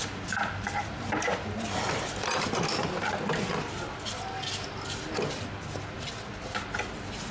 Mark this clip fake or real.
real